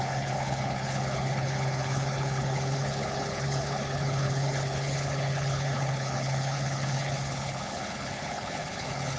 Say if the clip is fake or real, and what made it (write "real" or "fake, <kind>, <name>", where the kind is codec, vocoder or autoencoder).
fake, codec, HILCodec